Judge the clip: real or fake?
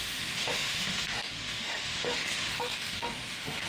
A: fake